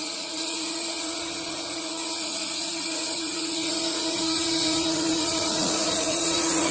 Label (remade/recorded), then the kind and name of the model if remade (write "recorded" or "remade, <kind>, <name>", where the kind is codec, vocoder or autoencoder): remade, vocoder, Vocos